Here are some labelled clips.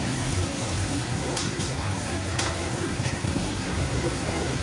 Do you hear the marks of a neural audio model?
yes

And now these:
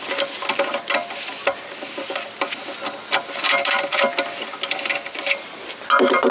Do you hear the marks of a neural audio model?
no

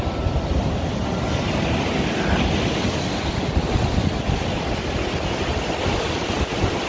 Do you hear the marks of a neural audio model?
no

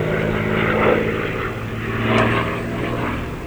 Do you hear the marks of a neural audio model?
no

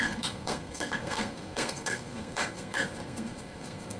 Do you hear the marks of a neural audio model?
yes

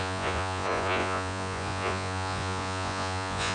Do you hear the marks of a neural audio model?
yes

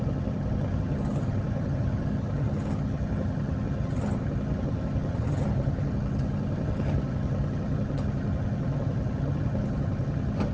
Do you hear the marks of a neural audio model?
yes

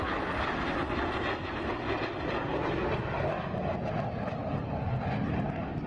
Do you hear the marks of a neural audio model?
no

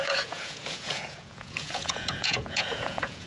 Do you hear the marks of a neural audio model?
yes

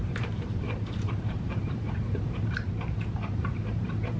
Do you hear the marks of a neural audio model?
yes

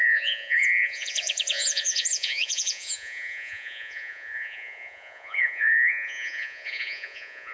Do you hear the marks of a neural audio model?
yes